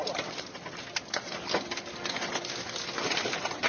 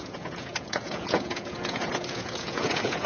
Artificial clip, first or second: second